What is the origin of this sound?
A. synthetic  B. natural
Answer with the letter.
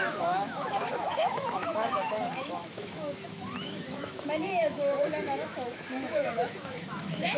A